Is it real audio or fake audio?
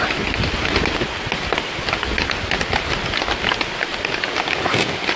real